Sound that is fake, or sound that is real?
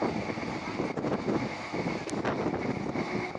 real